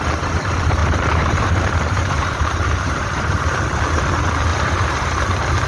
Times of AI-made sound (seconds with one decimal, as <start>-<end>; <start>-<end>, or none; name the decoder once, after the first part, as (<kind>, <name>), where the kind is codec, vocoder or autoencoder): 0.8-3.6 (vocoder, BigVGAN v2); 4.5-5.3